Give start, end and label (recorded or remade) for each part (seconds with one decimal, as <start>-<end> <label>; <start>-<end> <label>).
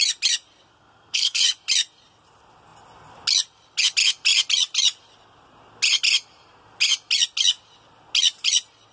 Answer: 0.0-0.7 recorded; 0.7-1.4 remade; 1.4-8.9 recorded